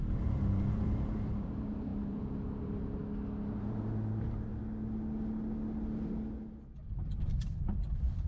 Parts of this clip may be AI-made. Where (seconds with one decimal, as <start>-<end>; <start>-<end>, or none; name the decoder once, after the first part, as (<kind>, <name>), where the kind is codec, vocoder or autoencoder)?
0.0-3.0 (vocoder, BigVGAN v2); 3.6-4.5; 6.9-8.3